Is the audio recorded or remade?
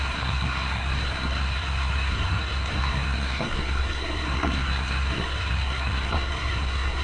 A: remade